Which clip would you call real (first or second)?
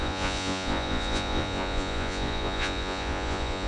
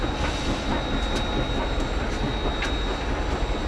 second